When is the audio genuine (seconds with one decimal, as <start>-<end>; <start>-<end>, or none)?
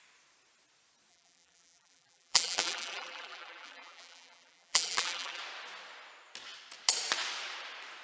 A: 0.0-1.1; 5.4-8.0